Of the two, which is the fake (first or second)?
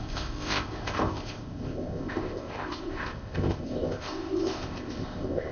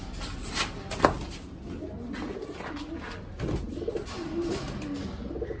first